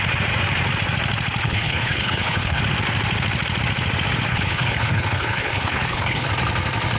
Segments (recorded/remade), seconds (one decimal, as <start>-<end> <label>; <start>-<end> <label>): 0.0-1.4 recorded; 1.4-2.6 remade; 2.6-4.3 recorded; 4.3-6.3 remade; 6.3-7.0 recorded